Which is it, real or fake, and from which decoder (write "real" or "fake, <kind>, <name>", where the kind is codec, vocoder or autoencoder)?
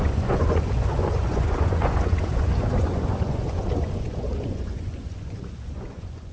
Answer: fake, vocoder, Vocos